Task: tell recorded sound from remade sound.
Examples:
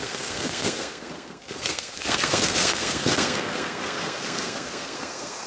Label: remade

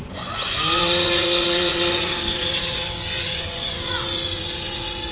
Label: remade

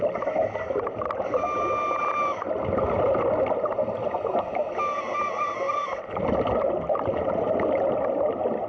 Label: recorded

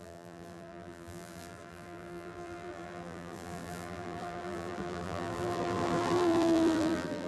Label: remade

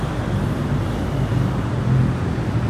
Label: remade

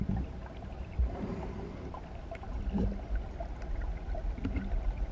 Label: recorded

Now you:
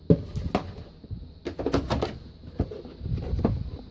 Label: recorded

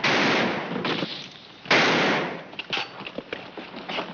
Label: recorded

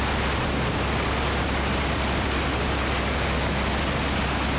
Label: recorded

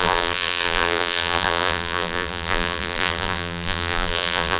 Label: remade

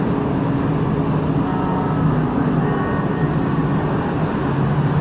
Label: recorded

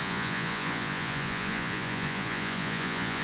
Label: remade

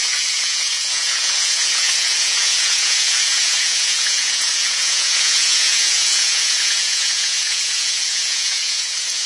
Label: remade